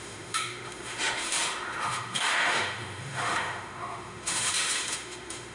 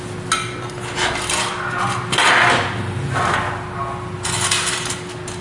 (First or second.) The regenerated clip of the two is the first